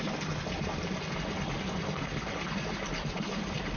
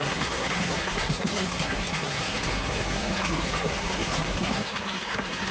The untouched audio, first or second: first